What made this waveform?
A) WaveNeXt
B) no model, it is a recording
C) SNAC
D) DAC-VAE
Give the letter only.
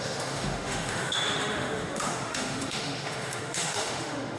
D